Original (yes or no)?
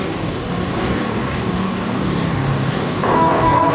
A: no